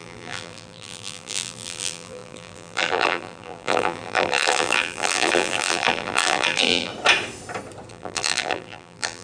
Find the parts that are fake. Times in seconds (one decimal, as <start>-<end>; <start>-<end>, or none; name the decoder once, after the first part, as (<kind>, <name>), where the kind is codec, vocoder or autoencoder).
0.0-6.9 (vocoder, BigVGAN v2); 7.9-9.2